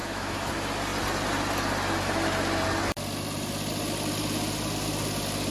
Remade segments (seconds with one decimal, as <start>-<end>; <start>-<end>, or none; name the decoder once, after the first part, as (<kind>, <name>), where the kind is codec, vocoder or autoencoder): 0.0-0.5 (autoencoder, DAC-VAE)